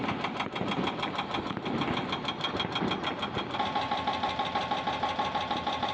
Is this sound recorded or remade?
recorded